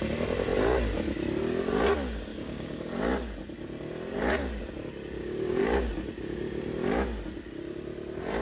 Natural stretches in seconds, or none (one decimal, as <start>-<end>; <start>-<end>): 0.0-2.3; 2.9-5.2; 5.9-8.4